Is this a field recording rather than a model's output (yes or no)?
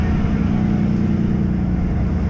yes